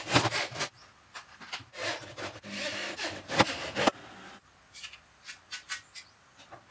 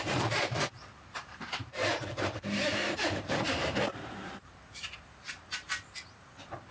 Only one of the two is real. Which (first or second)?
first